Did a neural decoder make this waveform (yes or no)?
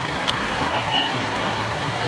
yes